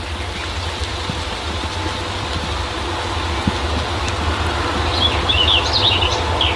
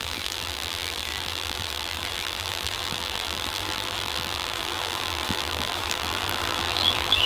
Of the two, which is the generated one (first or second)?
second